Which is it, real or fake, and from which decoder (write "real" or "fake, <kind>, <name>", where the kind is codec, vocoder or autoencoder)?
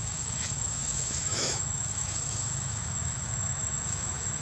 fake, autoencoder, DAC-VAE